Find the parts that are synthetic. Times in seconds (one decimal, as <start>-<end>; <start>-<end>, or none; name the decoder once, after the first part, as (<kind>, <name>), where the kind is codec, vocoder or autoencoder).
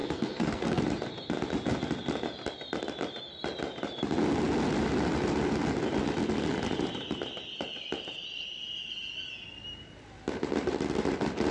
0.0-0.8 (codec, SNAC)